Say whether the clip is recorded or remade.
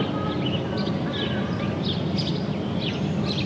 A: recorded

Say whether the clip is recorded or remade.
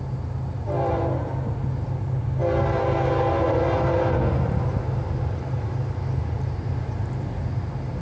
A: recorded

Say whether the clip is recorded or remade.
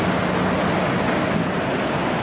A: recorded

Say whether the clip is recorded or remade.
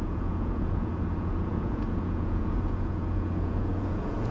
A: remade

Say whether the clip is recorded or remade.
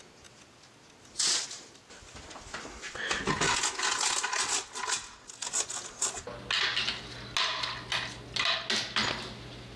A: recorded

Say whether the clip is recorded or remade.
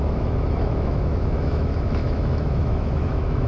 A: remade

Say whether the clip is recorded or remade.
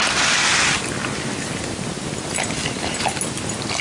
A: recorded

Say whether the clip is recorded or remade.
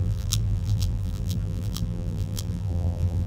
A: remade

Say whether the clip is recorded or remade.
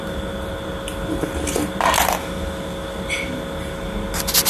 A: recorded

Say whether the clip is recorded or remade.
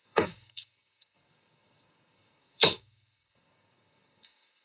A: remade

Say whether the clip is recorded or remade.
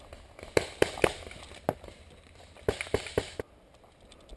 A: recorded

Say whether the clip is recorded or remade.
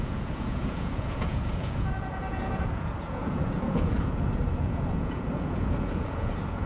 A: remade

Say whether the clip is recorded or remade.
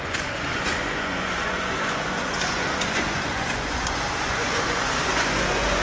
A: remade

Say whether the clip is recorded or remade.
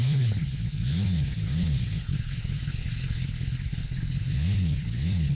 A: remade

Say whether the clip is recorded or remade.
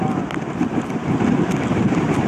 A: recorded